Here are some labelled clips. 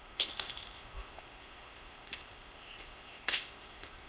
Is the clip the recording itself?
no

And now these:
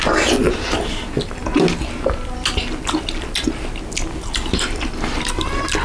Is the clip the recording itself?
yes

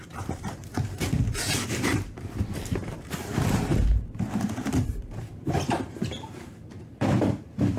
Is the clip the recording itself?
no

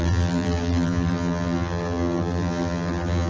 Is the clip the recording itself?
no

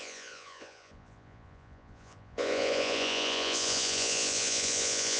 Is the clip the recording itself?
no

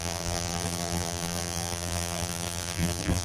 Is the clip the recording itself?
no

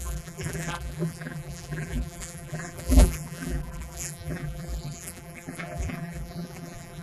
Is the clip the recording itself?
no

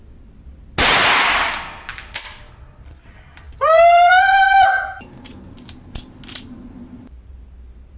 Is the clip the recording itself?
yes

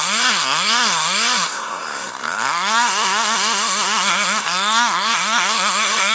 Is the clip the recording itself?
no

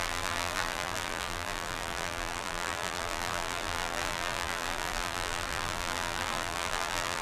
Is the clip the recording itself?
no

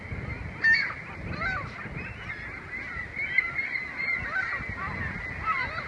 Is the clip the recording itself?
yes